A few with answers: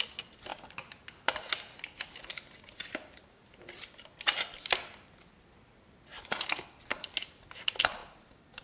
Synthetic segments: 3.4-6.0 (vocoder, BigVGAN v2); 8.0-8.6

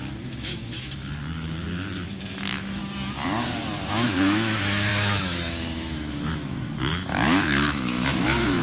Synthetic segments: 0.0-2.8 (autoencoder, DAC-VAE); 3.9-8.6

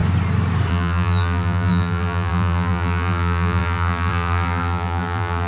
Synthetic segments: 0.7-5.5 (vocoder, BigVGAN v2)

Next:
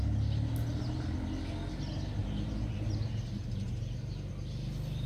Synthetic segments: 2.2-4.3 (vocoder, BigVGAN v2)

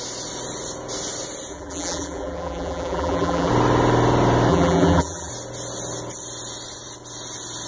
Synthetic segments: 1.5-3.5 (vocoder, BigVGAN v2); 4.5-5.3

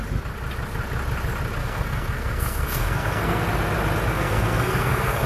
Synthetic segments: 1.6-3.4 (codec, SNAC); 4.1-5.3